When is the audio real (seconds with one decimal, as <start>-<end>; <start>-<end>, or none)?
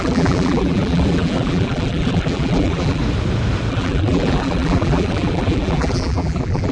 3.0-3.7